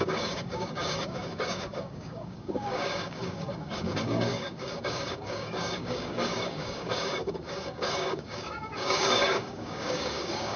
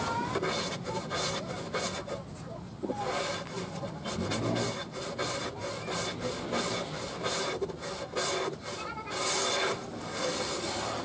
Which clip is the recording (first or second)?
second